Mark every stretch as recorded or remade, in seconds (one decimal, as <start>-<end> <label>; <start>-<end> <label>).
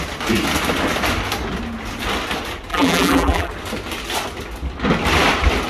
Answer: 0.0-2.7 recorded; 2.7-3.5 remade; 3.5-5.7 recorded